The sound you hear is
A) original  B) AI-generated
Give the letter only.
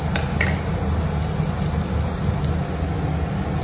A